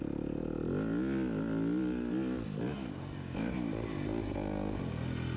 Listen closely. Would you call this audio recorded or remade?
recorded